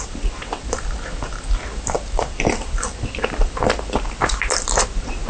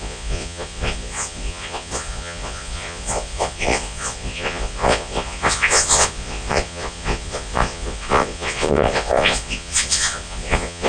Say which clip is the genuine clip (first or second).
first